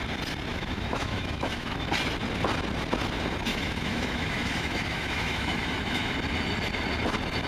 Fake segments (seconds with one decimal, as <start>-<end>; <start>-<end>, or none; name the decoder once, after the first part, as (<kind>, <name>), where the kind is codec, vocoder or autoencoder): 0.5-1.9 (autoencoder, DAC-VAE); 3.5-6.1